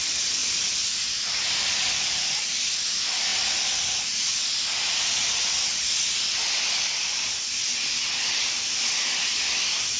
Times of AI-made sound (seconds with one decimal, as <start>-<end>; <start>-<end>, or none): 0.0-0.4; 1.2-3.3; 8.2-10.0